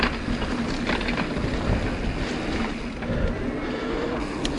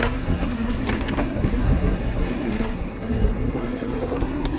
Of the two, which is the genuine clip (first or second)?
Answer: first